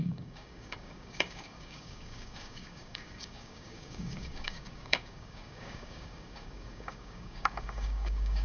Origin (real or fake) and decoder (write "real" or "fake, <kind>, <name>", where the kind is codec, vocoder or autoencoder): fake, codec, DAC